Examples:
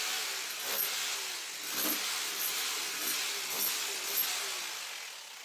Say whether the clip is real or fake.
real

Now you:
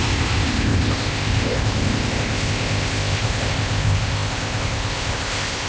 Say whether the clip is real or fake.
fake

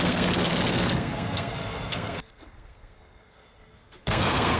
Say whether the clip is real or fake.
fake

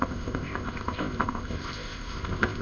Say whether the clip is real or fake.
fake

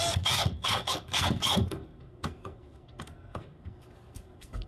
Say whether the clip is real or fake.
fake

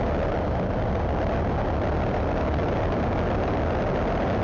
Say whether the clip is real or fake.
real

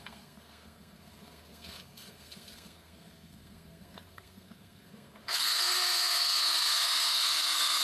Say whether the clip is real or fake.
fake